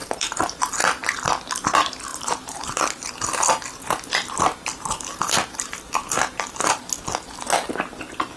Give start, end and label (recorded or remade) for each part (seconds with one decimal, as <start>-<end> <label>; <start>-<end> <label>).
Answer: 0.0-0.7 remade; 0.7-2.1 recorded; 2.1-3.1 remade; 3.1-4.7 recorded; 4.7-6.8 remade; 6.8-8.4 recorded

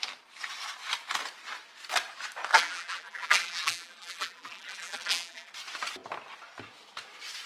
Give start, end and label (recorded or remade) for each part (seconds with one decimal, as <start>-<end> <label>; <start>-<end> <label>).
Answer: 0.0-2.5 recorded; 2.5-5.5 remade; 5.5-7.5 recorded

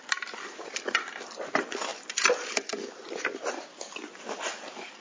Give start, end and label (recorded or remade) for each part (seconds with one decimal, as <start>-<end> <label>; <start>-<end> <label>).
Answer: 0.0-5.0 recorded

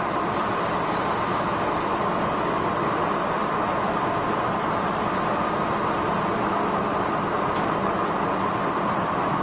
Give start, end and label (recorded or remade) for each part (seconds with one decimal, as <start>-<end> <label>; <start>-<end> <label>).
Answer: 0.0-9.4 recorded

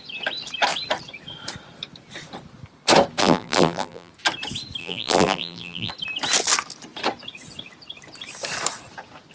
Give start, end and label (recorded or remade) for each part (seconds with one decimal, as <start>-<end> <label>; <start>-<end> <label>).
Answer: 0.0-3.2 recorded; 3.2-4.1 remade; 4.1-4.8 recorded; 4.8-5.9 remade; 5.9-9.3 recorded